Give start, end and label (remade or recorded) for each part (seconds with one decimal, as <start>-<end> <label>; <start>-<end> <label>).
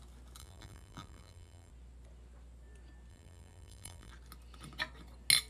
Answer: 0.0-0.4 recorded; 0.4-1.7 remade; 1.7-3.1 recorded; 3.1-4.1 remade; 4.1-5.5 recorded